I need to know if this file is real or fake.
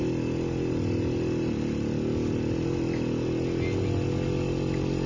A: real